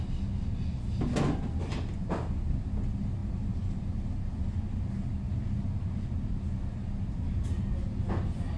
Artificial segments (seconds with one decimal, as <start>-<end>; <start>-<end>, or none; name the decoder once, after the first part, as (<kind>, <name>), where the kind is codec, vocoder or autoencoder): 3.2-3.8 (vocoder, BigVGAN v2)